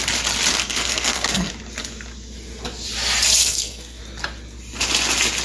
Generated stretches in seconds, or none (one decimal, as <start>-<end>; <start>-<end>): 0.5-1.5; 3.4-4.0